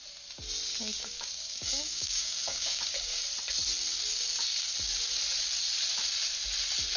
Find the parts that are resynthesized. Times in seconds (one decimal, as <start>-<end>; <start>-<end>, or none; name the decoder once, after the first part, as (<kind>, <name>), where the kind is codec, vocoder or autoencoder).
0.7-3.2 (codec, DAC)